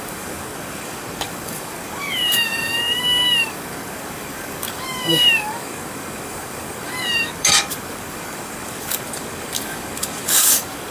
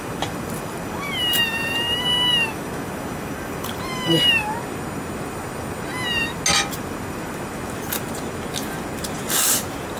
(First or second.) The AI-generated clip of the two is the first